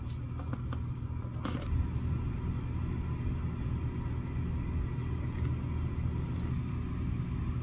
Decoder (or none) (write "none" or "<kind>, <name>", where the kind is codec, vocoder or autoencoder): none